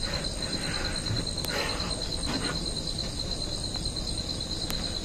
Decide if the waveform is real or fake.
real